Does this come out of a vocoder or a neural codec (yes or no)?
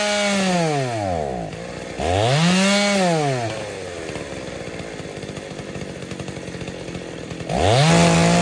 no